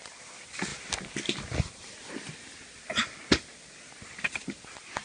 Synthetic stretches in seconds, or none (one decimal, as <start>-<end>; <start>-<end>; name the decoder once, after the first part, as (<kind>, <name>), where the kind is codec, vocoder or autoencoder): none